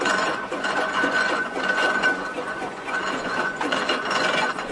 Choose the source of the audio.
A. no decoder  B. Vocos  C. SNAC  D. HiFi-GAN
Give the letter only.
B